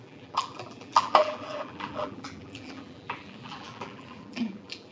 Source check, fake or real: fake